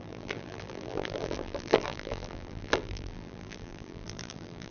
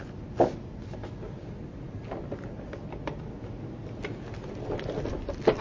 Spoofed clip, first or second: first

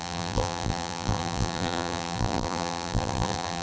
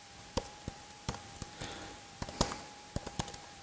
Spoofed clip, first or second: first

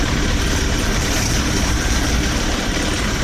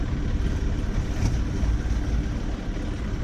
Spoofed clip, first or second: first